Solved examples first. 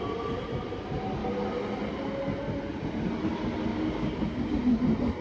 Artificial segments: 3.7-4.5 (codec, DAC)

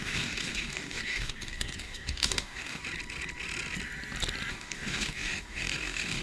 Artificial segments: 0.0-2.8 (codec, DAC); 4.5-6.2

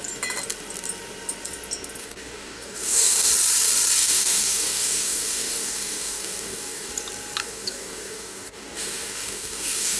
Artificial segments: 2.0-3.3 (codec, DAC); 4.0-6.9; 7.4-10.0

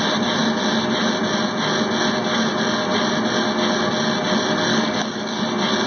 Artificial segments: 4.7-5.4 (codec, DAC)